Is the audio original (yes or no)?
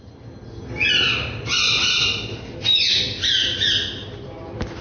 yes